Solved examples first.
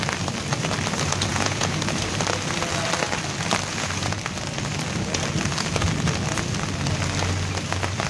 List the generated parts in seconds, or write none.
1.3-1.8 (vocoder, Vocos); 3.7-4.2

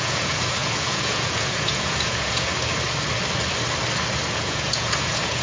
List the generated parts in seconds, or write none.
0.0-2.5 (vocoder, Vocos); 4.3-5.4

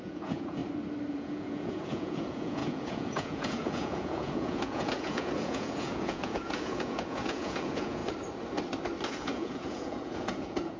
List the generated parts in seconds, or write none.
0.0-0.6 (vocoder, Vocos); 1.1-8.0; 9.1-10.8

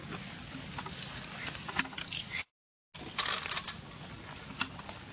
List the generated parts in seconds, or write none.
none

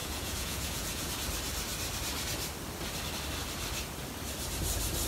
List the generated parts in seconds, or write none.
0.0-1.1 (vocoder, Vocos)